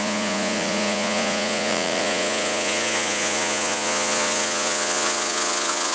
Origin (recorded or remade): remade